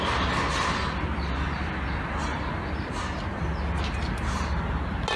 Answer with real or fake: real